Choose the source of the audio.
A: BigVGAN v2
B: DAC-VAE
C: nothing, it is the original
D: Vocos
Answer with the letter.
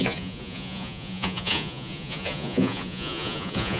D